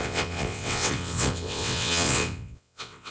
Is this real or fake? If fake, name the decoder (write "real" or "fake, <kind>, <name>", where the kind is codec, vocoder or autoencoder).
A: fake, vocoder, WaveNeXt